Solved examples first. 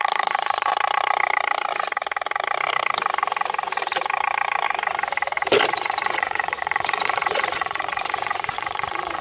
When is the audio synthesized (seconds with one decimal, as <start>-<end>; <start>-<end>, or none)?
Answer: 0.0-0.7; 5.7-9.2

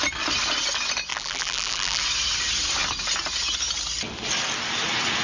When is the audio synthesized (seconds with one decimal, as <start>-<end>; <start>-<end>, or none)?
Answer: 1.1-2.0

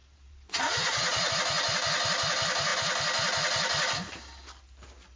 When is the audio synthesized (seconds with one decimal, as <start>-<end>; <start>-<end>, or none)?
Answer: 0.0-1.3

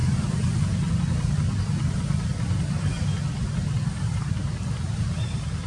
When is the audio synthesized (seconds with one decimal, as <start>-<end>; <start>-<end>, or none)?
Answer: none

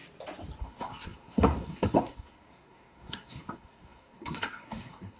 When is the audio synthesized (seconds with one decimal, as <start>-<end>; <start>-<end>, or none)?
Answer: 0.6-5.2

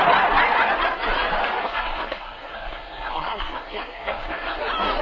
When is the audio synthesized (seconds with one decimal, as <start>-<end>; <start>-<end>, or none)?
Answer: 1.6-4.6